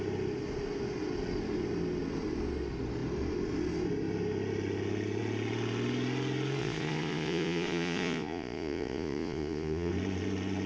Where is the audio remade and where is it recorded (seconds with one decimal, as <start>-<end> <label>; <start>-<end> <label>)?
0.0-6.6 recorded; 6.6-9.9 remade; 9.9-10.7 recorded